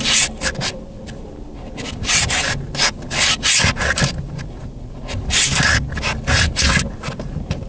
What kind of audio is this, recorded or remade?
recorded